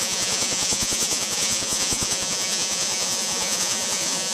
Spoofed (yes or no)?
yes